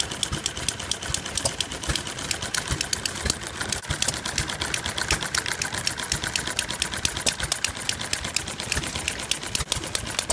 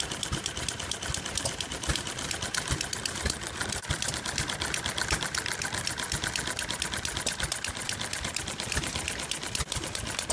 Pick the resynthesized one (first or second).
second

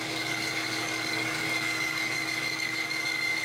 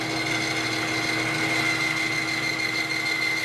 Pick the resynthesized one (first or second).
first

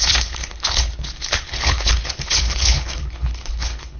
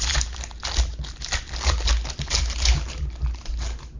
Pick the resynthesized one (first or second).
first